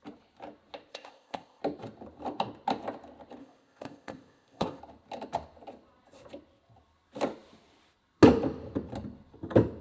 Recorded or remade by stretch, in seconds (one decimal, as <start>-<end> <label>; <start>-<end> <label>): 0.0-0.9 recorded; 0.9-1.6 remade; 1.6-3.4 recorded; 3.4-4.8 remade; 4.8-9.8 recorded